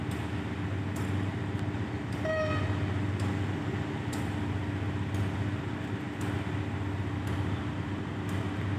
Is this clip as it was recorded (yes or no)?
yes